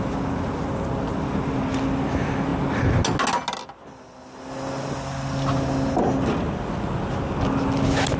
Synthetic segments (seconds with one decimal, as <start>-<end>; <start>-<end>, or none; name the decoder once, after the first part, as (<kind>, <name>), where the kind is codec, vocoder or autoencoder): none